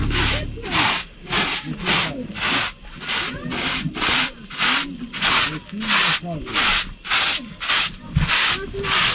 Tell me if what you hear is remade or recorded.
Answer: recorded